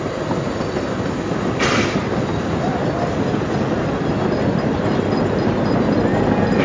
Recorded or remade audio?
recorded